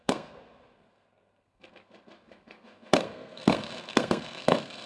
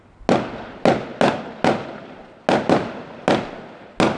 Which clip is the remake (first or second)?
first